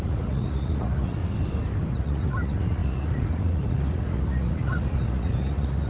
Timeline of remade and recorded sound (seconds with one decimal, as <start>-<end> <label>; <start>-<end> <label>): 0.0-1.2 remade; 1.2-1.9 recorded; 1.9-5.9 remade

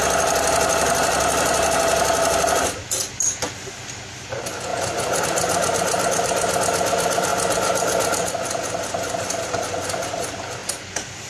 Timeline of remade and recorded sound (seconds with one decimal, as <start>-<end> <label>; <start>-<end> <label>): 0.0-11.3 recorded

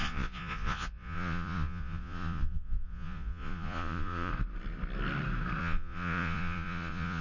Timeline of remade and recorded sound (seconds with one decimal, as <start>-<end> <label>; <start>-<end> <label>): 0.0-4.3 remade; 4.3-5.6 recorded; 5.6-7.2 remade

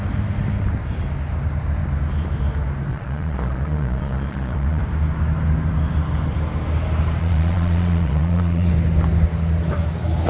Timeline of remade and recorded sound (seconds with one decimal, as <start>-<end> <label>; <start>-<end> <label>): 0.0-2.9 recorded; 2.9-4.8 remade; 4.8-7.2 recorded; 7.2-8.7 remade; 8.7-10.3 recorded

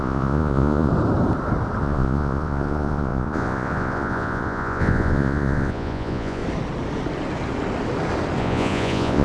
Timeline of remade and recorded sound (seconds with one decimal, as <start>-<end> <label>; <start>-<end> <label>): 0.0-0.9 remade; 0.9-1.8 recorded; 1.8-6.4 remade; 6.4-8.4 recorded; 8.4-9.2 remade

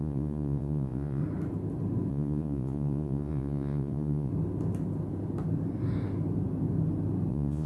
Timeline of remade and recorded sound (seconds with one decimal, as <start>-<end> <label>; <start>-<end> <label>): 0.0-1.2 remade; 1.2-2.1 recorded; 2.1-4.3 remade; 4.3-7.3 recorded; 7.3-7.7 remade